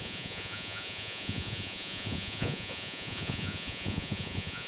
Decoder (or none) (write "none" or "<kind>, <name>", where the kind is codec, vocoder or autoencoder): vocoder, Vocos